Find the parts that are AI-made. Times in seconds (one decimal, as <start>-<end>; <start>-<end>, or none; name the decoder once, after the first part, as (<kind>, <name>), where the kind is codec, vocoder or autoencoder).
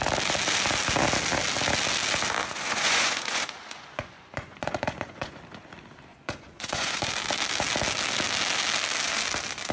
2.4-5.4 (vocoder, Vocos); 6.1-7.1